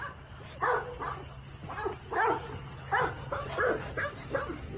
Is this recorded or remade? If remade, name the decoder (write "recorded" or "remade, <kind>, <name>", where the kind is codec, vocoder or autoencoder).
recorded